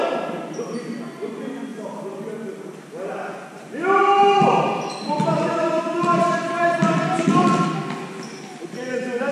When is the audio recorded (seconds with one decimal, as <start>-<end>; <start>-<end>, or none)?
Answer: 0.0-9.3